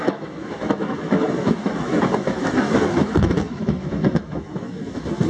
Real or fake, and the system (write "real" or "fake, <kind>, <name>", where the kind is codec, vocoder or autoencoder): fake, autoencoder, DAC-VAE